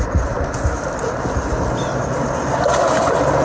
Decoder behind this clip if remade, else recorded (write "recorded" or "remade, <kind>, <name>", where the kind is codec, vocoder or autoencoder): recorded